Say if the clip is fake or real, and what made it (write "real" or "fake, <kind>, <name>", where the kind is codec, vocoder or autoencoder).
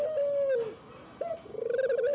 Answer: real